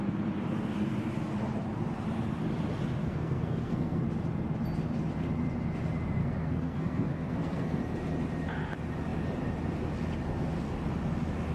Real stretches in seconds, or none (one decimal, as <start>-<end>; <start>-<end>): 0.0-3.0; 4.0-6.2; 7.8-11.5